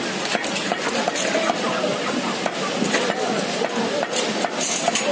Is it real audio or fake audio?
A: real